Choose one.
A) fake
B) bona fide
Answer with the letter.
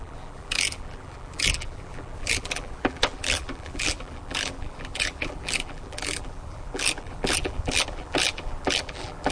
A